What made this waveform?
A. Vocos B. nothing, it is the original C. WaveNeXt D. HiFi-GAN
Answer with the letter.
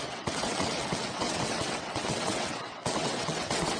C